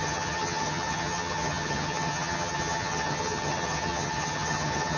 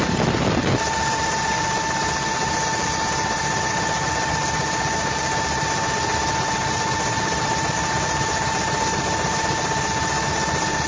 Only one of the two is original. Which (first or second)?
second